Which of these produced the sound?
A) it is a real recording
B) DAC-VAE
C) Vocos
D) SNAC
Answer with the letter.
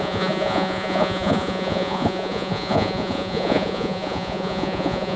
C